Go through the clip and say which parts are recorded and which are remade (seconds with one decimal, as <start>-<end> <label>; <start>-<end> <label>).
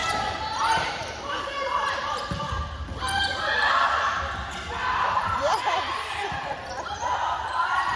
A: 0.0-1.2 remade; 1.2-4.8 recorded; 4.8-6.3 remade; 6.3-8.0 recorded